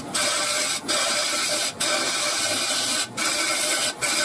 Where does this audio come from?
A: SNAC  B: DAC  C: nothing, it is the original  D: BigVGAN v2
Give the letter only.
C